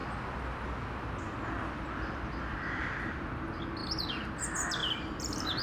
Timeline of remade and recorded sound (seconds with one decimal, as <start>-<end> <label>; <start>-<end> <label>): 0.0-4.8 recorded; 4.8-5.6 remade